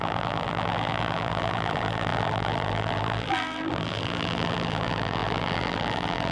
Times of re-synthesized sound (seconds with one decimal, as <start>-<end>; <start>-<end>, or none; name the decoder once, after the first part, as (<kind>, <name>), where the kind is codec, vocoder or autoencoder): 0.0-6.3 (vocoder, BigVGAN v2)